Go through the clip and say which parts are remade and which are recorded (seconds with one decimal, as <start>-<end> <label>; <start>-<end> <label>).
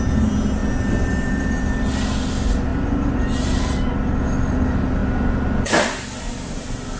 0.0-7.0 recorded